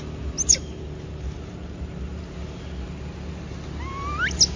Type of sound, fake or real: real